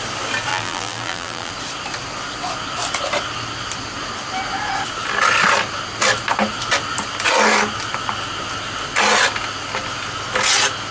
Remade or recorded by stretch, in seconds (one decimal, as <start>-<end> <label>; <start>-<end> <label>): 0.0-0.5 recorded; 0.5-1.5 remade; 1.5-10.9 recorded